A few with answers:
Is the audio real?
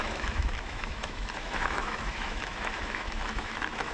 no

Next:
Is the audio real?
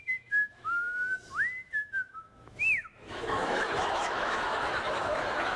no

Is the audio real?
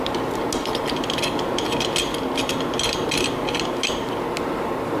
yes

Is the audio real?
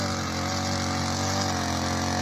yes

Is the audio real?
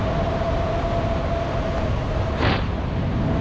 yes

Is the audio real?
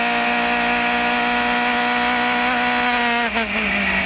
yes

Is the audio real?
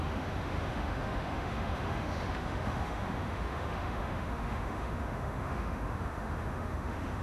no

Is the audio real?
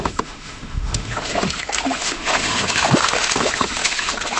no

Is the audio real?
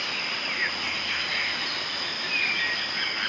yes